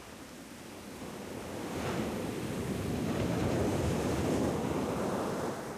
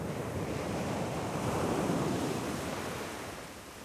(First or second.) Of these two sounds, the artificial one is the second